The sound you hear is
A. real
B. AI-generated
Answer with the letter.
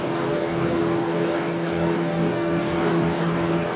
B